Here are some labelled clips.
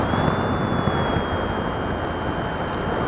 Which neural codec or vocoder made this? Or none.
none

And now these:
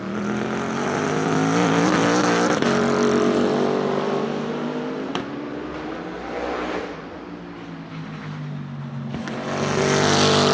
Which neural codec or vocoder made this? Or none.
none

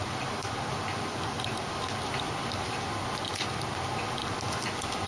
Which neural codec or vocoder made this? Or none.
vocoder, BigVGAN v2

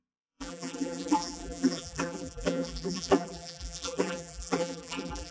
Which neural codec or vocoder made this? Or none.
vocoder, BigVGAN v2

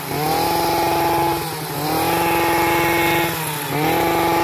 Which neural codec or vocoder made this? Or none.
none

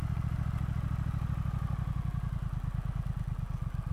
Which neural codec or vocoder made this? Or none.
none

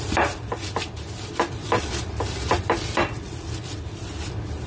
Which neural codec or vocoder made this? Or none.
vocoder, BigVGAN v2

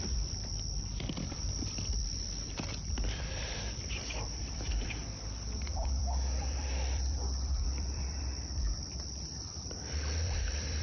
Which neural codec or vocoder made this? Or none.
vocoder, BigVGAN v2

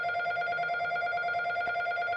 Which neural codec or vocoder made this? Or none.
none